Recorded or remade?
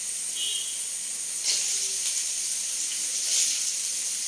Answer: recorded